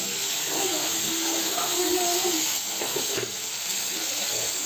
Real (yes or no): no